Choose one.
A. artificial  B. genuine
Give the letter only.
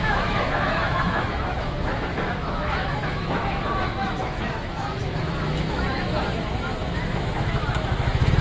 A